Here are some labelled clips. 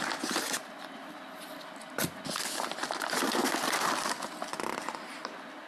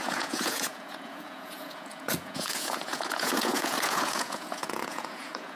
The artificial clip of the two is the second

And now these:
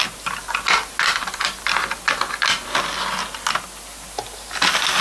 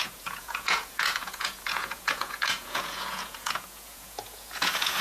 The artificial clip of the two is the second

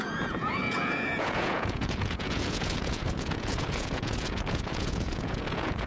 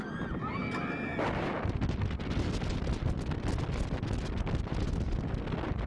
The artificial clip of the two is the first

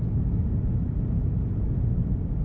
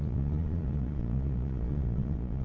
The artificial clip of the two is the second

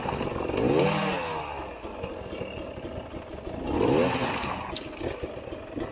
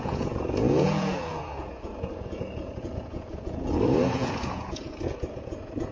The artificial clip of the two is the second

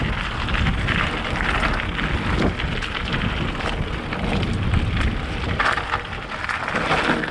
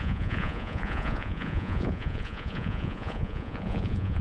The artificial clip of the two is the second